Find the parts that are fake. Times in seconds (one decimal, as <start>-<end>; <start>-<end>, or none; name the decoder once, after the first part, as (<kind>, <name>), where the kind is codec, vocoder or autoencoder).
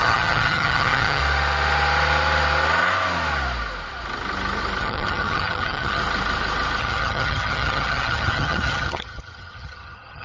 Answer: 0.0-1.2 (vocoder, HiFi-GAN); 4.8-6.0; 6.8-10.2